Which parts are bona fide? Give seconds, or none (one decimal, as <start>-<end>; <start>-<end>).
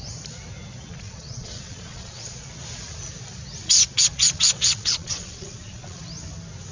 0.0-0.9; 2.5-3.6; 6.0-6.7